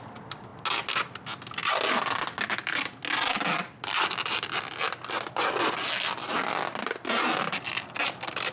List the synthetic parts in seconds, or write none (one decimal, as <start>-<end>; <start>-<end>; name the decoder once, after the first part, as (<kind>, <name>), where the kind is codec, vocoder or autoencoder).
none